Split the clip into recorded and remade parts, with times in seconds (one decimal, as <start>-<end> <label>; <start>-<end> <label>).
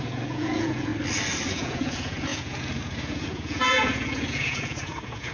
0.0-0.9 remade; 0.9-1.5 recorded; 1.5-5.3 remade